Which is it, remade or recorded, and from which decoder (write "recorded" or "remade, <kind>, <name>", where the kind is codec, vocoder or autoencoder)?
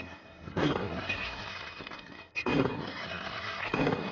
remade, codec, SNAC